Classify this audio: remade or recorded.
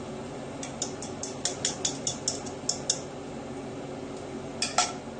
recorded